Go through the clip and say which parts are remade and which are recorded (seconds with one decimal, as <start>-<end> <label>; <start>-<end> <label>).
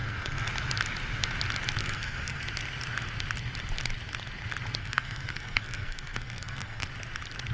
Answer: 0.0-0.5 remade; 0.5-1.8 recorded; 1.8-2.4 remade; 2.4-4.8 recorded; 4.8-6.9 remade; 6.9-7.5 recorded